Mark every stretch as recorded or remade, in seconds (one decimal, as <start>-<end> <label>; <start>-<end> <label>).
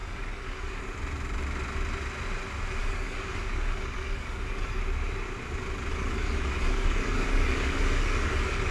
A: 0.0-0.8 remade; 0.8-2.8 recorded; 2.8-4.8 remade; 4.8-5.9 recorded; 5.9-8.7 remade